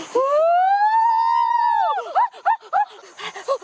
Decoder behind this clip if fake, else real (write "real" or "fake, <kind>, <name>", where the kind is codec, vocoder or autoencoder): real